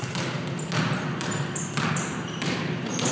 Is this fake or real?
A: real